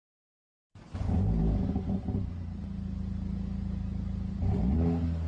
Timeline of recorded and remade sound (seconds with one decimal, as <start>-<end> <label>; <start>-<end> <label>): 0.0-5.3 recorded